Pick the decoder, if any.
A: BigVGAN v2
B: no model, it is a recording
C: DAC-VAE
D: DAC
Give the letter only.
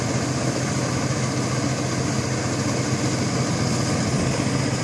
B